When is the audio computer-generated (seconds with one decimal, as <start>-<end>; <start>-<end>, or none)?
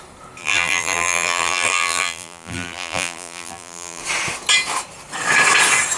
0.4-4.0